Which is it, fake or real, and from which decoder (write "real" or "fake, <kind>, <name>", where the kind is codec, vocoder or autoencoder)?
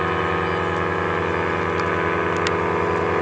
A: real